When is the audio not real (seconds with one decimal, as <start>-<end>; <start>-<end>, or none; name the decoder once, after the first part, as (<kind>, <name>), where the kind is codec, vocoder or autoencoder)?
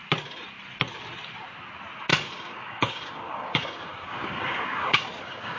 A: 2.1-5.6 (codec, DAC)